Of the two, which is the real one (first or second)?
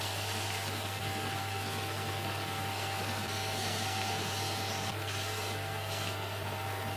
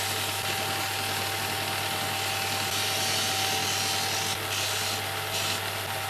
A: second